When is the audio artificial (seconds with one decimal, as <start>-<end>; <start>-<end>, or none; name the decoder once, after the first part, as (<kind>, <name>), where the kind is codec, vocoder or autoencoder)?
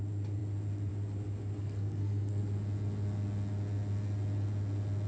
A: 1.6-2.4 (codec, SNAC)